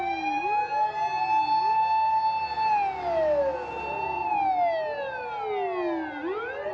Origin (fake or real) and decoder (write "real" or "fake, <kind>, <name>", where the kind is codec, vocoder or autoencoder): real